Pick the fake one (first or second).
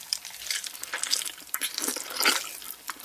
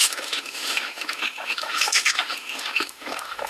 second